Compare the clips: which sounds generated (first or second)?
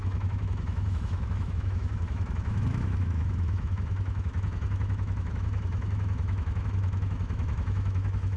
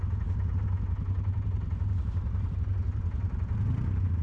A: first